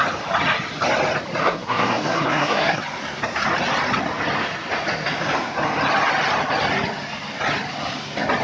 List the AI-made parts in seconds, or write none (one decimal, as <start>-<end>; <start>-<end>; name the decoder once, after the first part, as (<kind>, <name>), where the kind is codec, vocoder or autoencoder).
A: 1.4-2.8 (codec, SNAC)